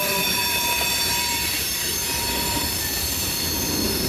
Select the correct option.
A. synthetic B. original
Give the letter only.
A